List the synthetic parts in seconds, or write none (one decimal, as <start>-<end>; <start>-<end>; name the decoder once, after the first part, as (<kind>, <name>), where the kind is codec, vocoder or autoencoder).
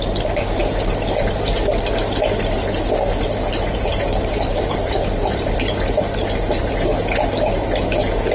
3.7-4.8 (vocoder, BigVGAN v2)